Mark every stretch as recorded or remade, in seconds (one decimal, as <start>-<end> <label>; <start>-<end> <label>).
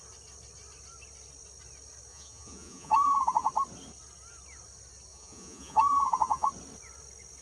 0.0-2.1 recorded; 2.1-3.5 remade; 3.5-5.1 recorded; 5.1-6.5 remade; 6.5-7.4 recorded